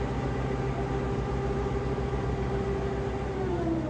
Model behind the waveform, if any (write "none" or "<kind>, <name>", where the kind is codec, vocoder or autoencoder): none